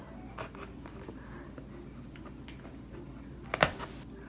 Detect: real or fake real